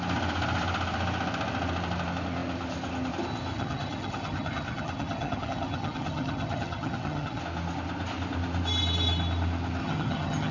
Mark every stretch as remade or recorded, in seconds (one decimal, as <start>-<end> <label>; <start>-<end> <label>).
0.0-3.5 recorded; 3.5-7.4 remade; 7.4-9.8 recorded; 9.8-10.5 remade